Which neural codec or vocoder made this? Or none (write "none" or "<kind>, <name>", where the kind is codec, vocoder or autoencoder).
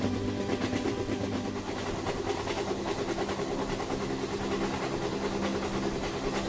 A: none